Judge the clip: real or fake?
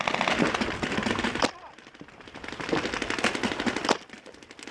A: real